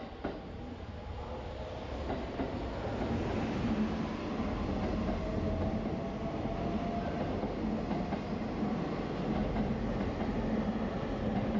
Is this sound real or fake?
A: real